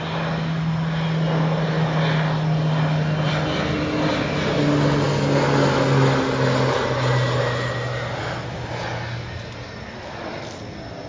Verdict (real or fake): real